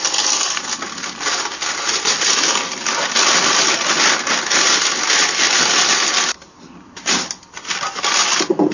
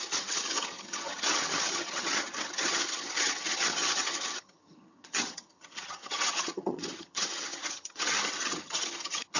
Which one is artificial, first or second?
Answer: second